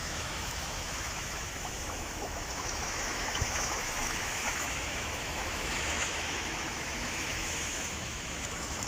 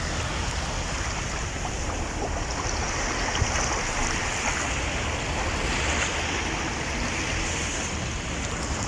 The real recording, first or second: second